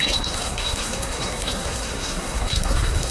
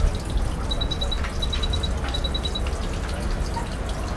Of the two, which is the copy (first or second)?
first